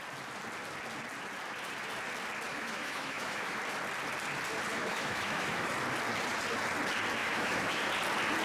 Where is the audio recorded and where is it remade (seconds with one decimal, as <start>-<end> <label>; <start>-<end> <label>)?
0.0-2.5 recorded; 2.5-3.6 remade; 3.6-4.8 recorded; 4.8-5.7 remade; 5.7-7.2 recorded; 7.2-7.8 remade; 7.8-8.4 recorded